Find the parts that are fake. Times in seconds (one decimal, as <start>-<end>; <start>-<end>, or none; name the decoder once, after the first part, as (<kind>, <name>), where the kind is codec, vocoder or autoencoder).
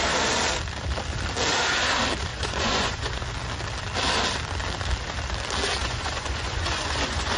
2.3-3.2 (vocoder, Vocos); 5.8-7.4